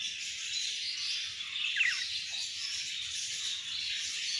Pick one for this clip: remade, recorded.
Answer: recorded